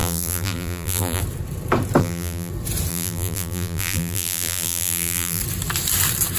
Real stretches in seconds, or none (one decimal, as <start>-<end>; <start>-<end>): 1.2-2.0; 2.5-2.9; 5.4-6.4